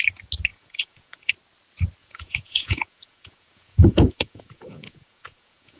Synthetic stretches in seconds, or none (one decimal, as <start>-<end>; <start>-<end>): 0.5-1.3; 2.0-5.8

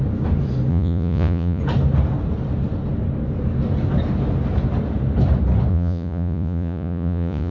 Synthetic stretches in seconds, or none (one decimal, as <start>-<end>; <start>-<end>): 0.7-1.6; 5.7-7.5

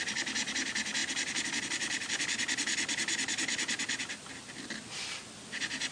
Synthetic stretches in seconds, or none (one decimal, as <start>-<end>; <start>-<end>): none

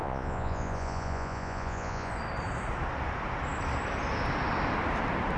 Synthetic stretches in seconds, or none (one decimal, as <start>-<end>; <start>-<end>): 0.0-2.1

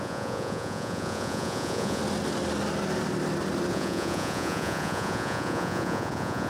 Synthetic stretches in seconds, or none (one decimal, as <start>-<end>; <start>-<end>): 0.0-2.0; 3.7-6.5

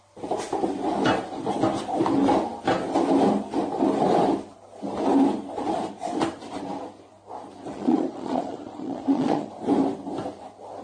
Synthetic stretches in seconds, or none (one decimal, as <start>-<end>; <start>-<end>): 7.7-9.5

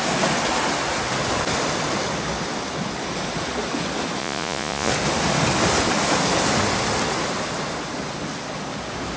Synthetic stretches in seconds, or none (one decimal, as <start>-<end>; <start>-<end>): 4.2-4.9

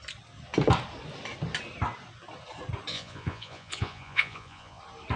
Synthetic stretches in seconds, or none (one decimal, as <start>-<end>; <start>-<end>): 2.9-4.8